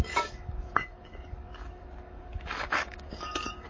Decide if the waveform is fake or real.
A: fake